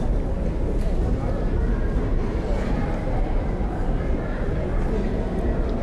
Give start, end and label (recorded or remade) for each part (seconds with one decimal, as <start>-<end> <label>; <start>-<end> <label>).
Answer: 0.0-5.8 recorded